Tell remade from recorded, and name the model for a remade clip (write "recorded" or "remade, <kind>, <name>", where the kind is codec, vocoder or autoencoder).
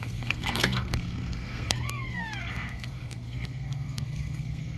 remade, codec, SNAC